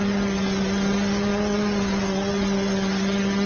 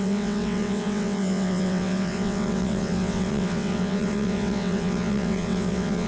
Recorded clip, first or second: first